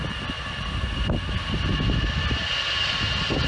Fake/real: real